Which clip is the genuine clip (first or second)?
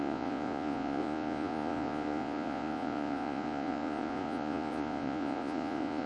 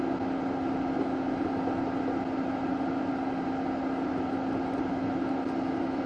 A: second